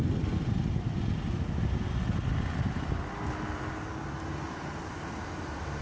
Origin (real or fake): real